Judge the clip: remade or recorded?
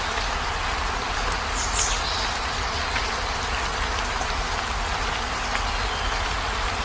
recorded